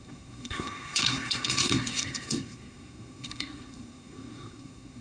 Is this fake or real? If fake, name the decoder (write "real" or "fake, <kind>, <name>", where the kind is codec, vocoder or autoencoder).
fake, codec, SNAC